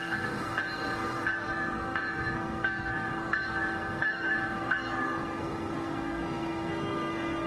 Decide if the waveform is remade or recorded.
remade